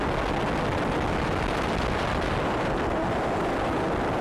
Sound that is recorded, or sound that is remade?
recorded